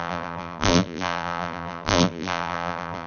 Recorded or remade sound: remade